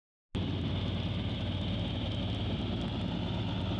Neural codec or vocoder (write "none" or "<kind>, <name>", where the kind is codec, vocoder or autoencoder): none